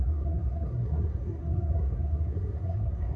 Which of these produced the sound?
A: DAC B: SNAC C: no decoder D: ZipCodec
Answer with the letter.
B